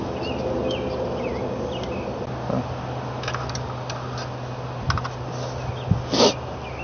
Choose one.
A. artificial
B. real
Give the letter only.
B